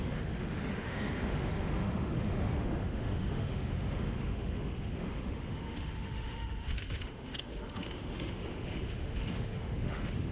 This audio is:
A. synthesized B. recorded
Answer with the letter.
A